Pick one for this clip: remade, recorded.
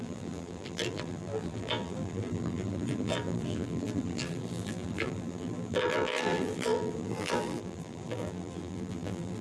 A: remade